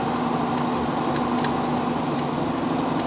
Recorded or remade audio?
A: recorded